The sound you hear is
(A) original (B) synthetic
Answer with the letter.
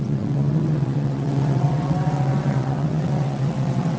B